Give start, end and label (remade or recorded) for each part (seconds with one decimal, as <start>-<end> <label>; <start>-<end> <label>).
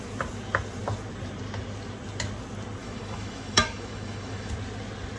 0.0-2.8 recorded; 2.8-4.5 remade; 4.5-5.2 recorded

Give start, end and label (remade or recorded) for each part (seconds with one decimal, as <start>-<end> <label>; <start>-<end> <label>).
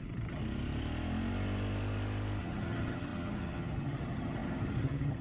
0.0-0.4 remade; 0.4-2.4 recorded; 2.4-5.2 remade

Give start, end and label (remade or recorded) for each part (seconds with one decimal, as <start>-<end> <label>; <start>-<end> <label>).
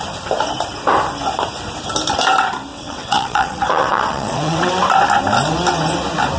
0.0-2.7 recorded; 2.7-4.7 remade; 4.7-6.4 recorded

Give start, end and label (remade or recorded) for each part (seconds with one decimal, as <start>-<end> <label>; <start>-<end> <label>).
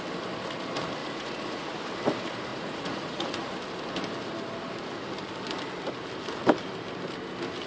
0.0-1.0 recorded; 1.0-1.8 remade; 1.8-2.5 recorded; 2.5-3.5 remade; 3.5-7.7 recorded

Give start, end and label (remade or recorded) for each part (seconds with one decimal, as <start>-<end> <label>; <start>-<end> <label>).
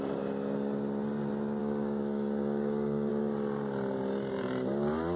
0.0-1.6 recorded; 1.6-3.1 remade; 3.1-5.2 recorded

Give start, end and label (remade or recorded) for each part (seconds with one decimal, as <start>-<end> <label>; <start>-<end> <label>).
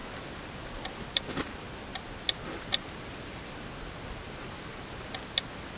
0.0-5.8 recorded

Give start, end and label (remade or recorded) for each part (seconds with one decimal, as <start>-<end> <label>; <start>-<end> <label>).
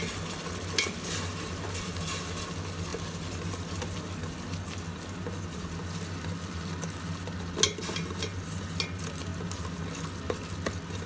0.0-11.1 recorded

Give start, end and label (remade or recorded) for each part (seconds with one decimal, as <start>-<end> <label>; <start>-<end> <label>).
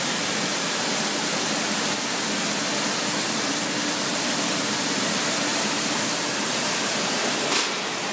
0.0-0.5 recorded; 0.5-1.9 remade; 1.9-5.5 recorded; 5.5-6.2 remade; 6.2-8.1 recorded